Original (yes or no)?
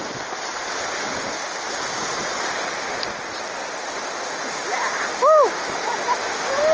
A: yes